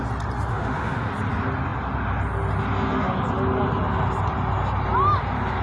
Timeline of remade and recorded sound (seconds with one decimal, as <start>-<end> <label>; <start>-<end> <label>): 0.0-0.5 recorded; 0.5-1.1 remade; 1.1-5.6 recorded